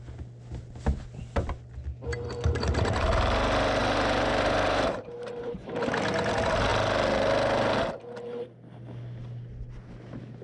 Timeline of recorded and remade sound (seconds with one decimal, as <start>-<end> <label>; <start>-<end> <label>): 0.0-3.8 recorded; 3.8-5.8 remade; 5.8-10.4 recorded